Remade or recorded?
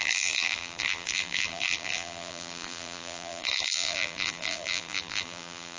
remade